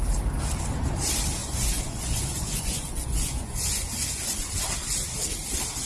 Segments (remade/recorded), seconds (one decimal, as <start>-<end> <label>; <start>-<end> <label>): 0.0-1.4 recorded; 1.4-4.5 remade; 4.5-5.9 recorded